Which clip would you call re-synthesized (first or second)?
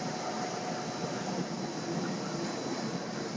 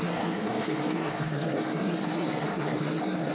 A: second